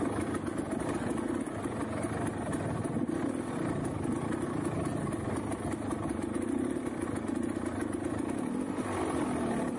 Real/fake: real